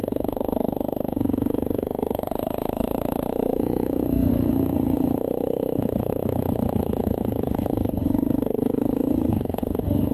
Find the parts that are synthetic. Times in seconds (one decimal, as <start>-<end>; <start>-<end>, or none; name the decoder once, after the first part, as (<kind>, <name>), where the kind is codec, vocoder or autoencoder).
0.0-10.1 (autoencoder, DAC-VAE)